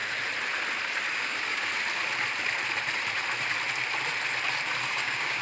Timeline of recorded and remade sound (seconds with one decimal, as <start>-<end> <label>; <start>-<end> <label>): 0.0-1.1 recorded; 1.1-1.7 remade; 1.7-4.9 recorded; 4.9-5.4 remade